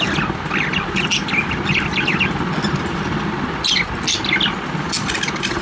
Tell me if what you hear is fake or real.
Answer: real